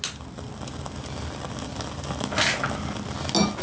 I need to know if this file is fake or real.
real